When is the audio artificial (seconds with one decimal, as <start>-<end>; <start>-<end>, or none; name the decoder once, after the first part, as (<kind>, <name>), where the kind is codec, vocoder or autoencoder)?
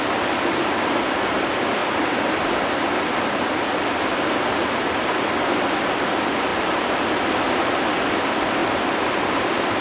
1.8-2.7 (vocoder, BigVGAN v2); 8.6-9.8